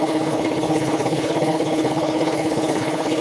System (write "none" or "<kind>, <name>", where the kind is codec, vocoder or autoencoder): codec, HILCodec